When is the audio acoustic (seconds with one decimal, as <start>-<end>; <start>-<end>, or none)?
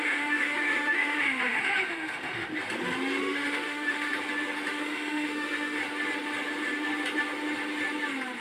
2.5-3.2; 4.1-4.7; 5.8-8.4